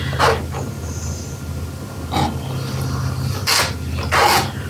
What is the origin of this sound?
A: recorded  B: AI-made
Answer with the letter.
A